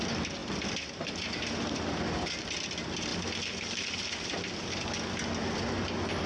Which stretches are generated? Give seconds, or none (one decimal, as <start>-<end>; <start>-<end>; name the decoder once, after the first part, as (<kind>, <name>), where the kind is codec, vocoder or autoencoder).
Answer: none